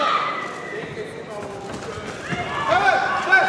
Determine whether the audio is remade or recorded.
recorded